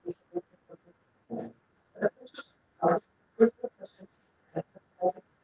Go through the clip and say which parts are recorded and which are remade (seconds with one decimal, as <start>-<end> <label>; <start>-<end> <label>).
0.0-0.7 recorded; 0.7-5.4 remade